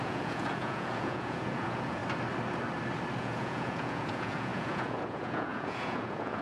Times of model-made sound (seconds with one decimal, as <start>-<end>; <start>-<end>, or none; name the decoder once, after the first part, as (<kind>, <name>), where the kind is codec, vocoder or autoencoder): 0.0-2.0 (vocoder, Vocos); 3.2-6.4